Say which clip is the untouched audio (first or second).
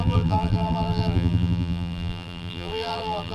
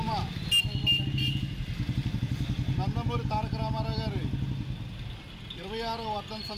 second